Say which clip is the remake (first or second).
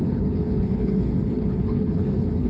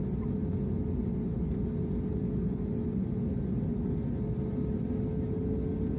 first